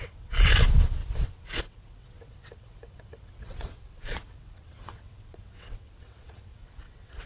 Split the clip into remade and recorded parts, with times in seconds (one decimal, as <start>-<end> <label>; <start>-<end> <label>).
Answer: 0.0-1.0 remade; 1.0-1.6 recorded; 1.6-7.3 remade